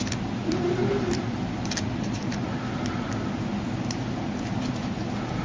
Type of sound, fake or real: real